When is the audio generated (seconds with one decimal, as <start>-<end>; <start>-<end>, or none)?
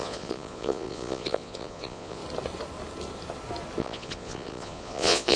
0.0-2.2; 3.8-5.4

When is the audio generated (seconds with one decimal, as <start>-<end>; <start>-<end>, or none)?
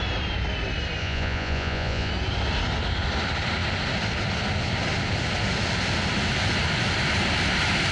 1.0-2.1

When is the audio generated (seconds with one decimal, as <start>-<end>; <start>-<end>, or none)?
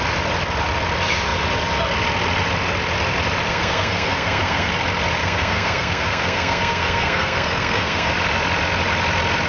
3.5-4.7; 5.2-8.1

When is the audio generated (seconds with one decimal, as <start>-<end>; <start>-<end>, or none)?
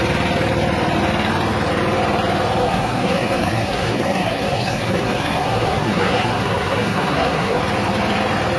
2.6-7.6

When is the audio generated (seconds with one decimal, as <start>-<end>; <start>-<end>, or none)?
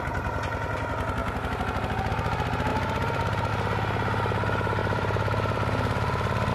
2.7-3.5; 4.8-6.5